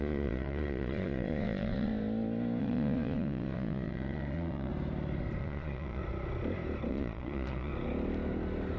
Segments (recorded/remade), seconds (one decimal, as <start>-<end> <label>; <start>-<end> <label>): 0.0-1.9 remade; 1.9-2.6 recorded; 2.6-4.7 remade; 4.7-5.4 recorded; 5.4-6.0 remade; 6.0-6.9 recorded; 6.9-7.7 remade; 7.7-8.8 recorded